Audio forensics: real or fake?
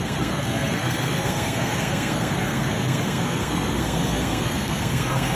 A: fake